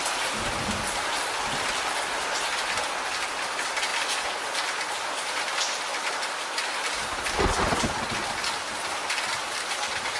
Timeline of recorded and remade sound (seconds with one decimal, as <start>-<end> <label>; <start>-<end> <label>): 0.0-10.2 recorded